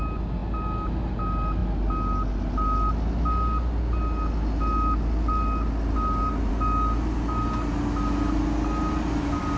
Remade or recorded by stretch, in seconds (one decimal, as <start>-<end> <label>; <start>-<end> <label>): 0.0-9.6 recorded